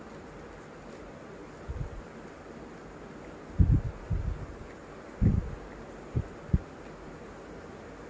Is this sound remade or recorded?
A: recorded